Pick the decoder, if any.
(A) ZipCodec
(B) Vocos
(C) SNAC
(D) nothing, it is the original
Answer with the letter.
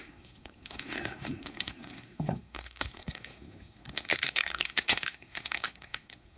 C